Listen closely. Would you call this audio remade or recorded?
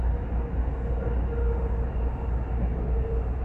recorded